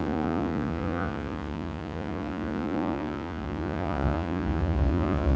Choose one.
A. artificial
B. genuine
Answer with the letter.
A